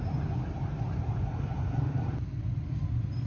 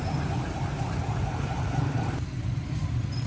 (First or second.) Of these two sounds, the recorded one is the first